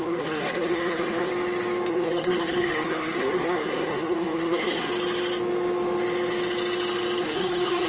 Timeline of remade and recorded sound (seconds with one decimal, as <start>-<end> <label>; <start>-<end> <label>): 0.0-1.3 remade; 1.3-1.9 recorded; 1.9-4.9 remade; 4.9-7.2 recorded; 7.2-7.9 remade